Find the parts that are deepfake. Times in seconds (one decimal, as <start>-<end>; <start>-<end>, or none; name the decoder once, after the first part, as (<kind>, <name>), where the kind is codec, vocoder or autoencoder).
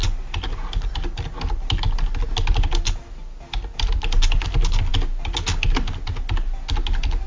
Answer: none